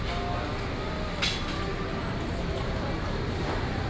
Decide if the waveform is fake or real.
real